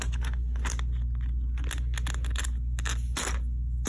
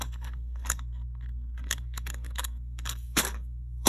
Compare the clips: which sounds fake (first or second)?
second